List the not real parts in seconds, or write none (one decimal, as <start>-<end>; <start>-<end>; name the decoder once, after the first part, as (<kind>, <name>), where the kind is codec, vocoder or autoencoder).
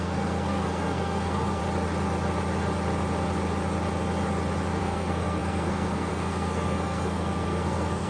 0.0-1.6 (codec, SNAC); 4.8-8.1